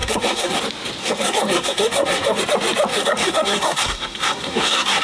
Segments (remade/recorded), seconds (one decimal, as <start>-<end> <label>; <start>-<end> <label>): 0.0-0.6 remade; 0.6-1.0 recorded; 1.0-2.4 remade; 2.4-2.9 recorded; 2.9-5.0 remade